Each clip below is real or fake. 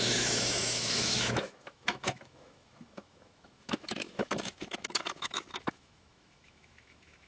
fake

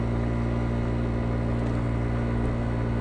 real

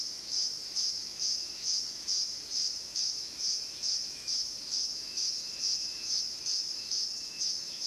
fake